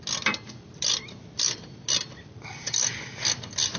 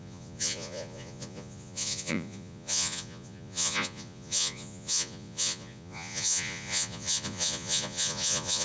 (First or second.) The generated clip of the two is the second